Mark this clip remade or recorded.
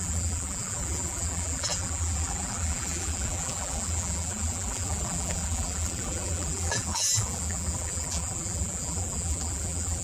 remade